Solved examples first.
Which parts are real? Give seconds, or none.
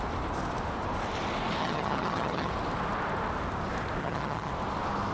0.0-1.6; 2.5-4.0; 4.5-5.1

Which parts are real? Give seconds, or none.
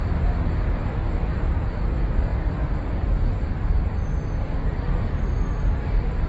0.0-1.2; 1.8-2.3; 3.9-6.3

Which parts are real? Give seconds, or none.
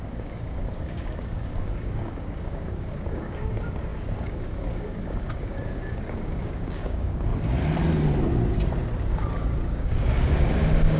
7.3-9.1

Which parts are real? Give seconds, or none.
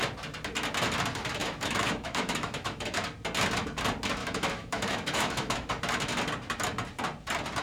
0.0-1.4; 3.0-4.2; 5.7-7.6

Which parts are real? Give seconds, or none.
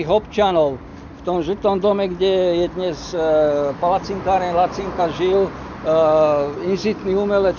0.0-7.6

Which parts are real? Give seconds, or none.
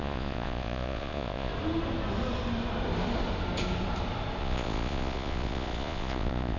1.5-4.4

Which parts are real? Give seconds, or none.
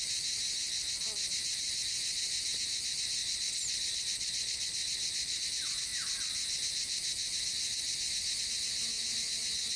0.0-3.2; 5.4-9.8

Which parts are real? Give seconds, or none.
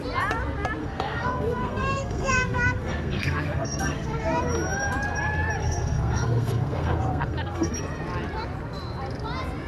0.0-0.8; 4.4-5.6; 7.7-9.7